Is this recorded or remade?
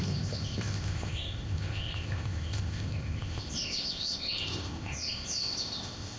remade